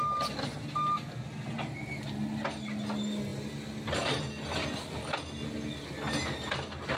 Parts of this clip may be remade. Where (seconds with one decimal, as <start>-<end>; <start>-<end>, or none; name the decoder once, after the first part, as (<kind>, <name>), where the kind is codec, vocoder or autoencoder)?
none